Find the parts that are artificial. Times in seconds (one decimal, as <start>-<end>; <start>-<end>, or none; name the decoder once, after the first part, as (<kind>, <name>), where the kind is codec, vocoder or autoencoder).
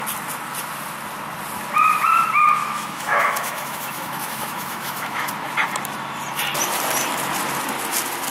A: 2.6-5.3 (autoencoder, DAC-VAE)